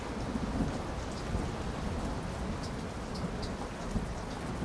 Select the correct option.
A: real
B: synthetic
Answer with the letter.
A